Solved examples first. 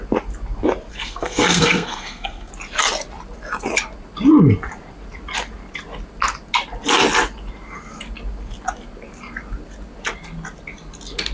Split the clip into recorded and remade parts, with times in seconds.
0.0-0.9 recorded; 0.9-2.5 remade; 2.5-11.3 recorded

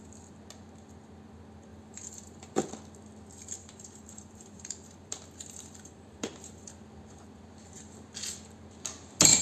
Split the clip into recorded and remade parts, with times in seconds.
0.0-1.7 recorded; 1.7-2.7 remade; 2.7-3.6 recorded; 3.6-6.7 remade; 6.7-9.4 recorded